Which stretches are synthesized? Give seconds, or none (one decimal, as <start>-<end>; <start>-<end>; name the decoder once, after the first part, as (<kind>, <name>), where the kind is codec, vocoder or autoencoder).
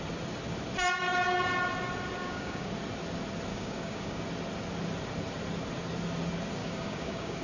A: 2.2-2.7 (codec, DAC); 3.5-4.2; 6.6-7.4